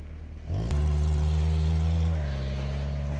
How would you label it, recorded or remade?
recorded